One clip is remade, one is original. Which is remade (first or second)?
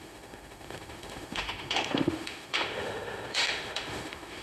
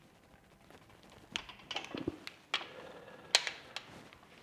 first